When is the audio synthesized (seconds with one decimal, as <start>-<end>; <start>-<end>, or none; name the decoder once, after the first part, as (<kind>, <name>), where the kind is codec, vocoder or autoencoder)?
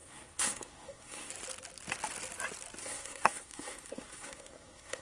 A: 0.0-1.3 (codec, SNAC); 2.8-5.0